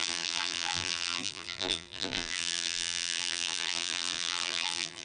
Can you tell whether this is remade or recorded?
remade